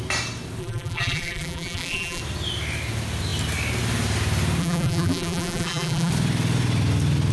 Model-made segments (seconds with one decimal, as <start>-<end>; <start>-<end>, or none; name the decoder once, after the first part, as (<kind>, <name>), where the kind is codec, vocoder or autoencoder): 0.6-2.2 (vocoder, BigVGAN v2); 4.6-6.1

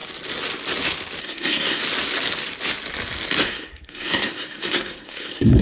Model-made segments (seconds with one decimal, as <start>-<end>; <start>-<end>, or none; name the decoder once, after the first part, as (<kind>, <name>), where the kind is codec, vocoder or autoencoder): 1.2-1.8 (codec, SNAC); 3.4-5.6